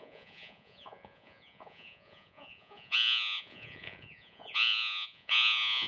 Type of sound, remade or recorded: remade